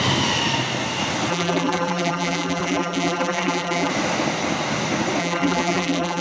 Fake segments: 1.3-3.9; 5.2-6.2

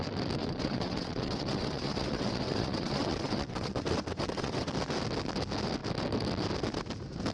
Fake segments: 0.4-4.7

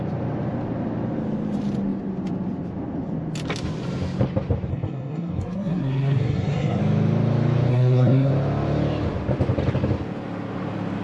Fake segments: 4.7-6.8; 7.7-8.3

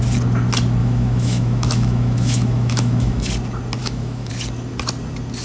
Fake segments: 0.8-3.3; 3.8-4.3